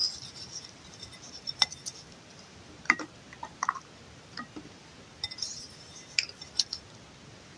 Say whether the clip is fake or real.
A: real